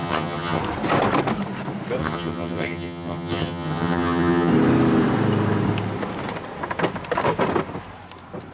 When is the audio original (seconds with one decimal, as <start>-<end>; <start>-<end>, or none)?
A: 0.6-2.0; 4.5-8.5